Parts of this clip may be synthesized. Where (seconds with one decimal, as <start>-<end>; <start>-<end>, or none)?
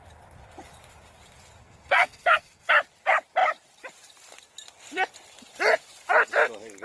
1.6-2.7